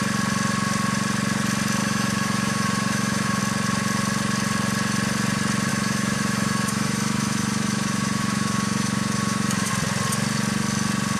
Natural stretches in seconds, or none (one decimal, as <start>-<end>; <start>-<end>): 0.0-1.8; 3.4-5.7; 9.7-11.2

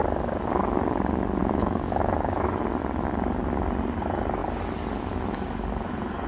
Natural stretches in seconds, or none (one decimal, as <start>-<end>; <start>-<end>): 0.0-1.4; 2.5-6.3

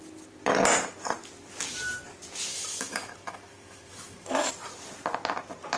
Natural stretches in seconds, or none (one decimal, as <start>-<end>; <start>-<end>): 0.0-2.5; 4.5-5.8

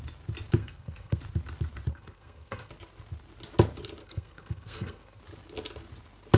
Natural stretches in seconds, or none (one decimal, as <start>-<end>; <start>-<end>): 0.0-0.6; 1.2-1.9; 2.7-4.0; 5.2-6.4

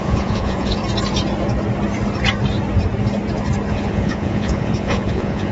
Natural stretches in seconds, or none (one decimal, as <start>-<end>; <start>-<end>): 0.8-3.7

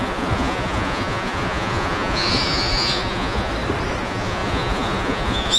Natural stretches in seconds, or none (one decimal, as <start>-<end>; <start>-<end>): 3.5-4.0

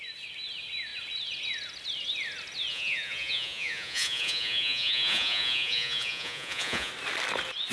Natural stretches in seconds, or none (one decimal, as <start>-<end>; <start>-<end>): 0.0-2.7; 6.9-7.7